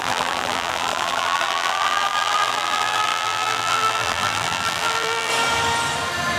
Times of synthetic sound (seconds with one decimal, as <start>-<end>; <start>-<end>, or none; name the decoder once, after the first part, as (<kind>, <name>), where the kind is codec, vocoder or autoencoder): 0.0-5.3 (vocoder, BigVGAN v2)